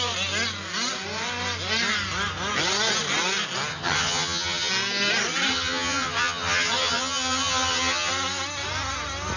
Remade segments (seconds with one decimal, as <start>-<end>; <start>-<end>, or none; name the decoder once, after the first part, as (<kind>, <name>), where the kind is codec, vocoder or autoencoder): 3.7-4.7 (vocoder, HiFi-GAN); 5.5-8.1